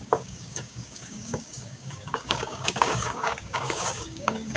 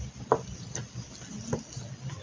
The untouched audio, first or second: second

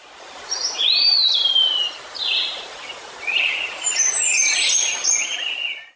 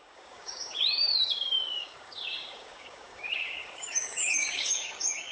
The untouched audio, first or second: first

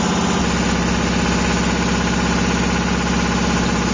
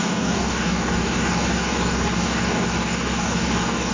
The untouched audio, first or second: first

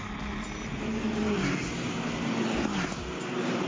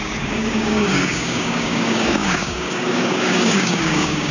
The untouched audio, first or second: first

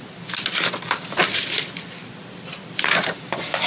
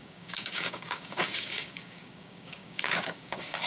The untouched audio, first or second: first